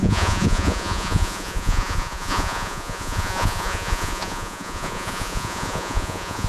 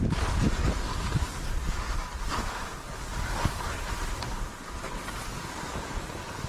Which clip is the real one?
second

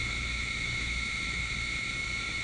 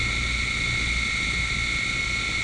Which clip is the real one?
second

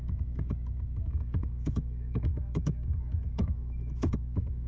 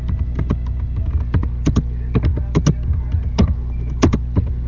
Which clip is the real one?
second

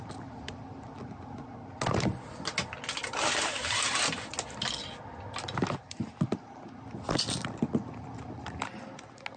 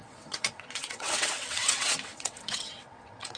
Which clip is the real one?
first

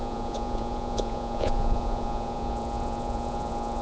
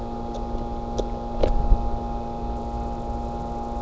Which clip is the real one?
second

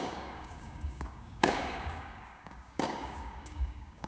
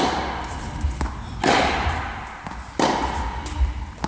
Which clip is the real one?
second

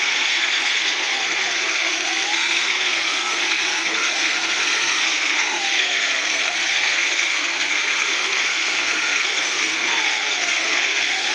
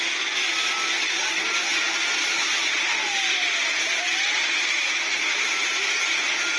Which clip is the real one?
second